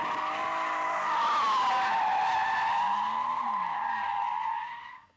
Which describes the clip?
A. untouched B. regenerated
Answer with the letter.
A